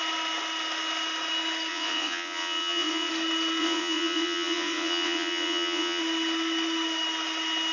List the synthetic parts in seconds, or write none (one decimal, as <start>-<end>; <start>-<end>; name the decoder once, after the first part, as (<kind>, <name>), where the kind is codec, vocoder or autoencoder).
1.7-3.1 (vocoder, WaveNeXt); 3.6-6.0